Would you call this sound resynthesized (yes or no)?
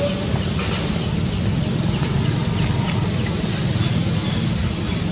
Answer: no